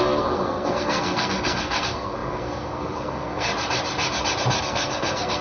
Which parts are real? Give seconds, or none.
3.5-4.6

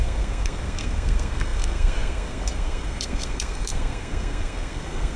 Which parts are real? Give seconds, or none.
none

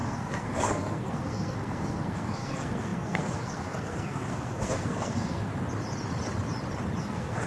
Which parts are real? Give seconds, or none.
5.5-7.0

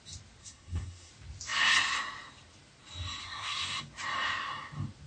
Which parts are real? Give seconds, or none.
0.0-0.4; 1.1-3.2; 3.8-5.1

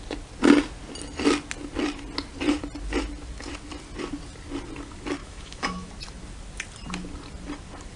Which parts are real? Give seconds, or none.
0.0-5.2; 5.9-8.0